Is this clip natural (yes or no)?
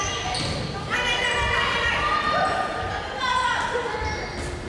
yes